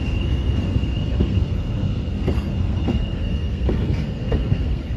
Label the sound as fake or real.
fake